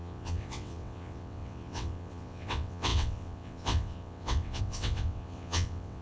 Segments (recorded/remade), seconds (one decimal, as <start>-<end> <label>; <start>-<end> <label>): 0.0-6.0 remade